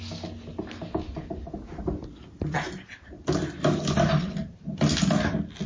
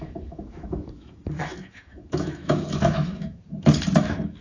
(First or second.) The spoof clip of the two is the second